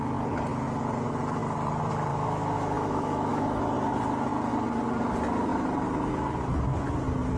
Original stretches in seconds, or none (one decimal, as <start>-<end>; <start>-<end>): 0.0-2.1; 3.6-7.4